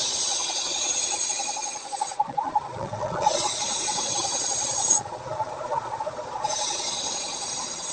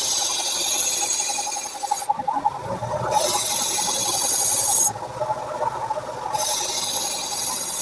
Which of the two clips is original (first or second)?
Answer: second